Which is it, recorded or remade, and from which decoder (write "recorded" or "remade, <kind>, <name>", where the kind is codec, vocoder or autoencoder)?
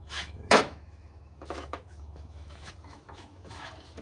remade, autoencoder, DAC-VAE